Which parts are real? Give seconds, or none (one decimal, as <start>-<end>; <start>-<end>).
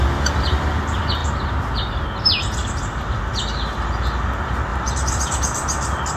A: 0.0-2.6; 3.2-4.7; 5.2-6.2